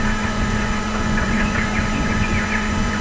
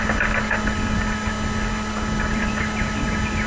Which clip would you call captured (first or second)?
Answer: second